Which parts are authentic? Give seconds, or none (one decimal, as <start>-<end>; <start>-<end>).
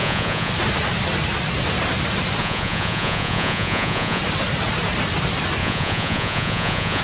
0.5-2.4; 4.2-5.6